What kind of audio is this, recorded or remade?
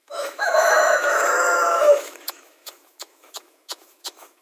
remade